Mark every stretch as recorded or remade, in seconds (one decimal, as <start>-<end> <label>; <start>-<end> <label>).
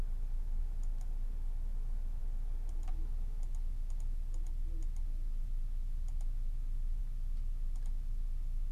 0.0-8.7 recorded